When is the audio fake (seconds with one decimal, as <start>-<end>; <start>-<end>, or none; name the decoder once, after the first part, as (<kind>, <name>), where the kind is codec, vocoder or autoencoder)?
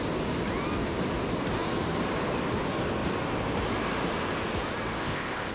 5.0-5.5 (codec, ZipCodec)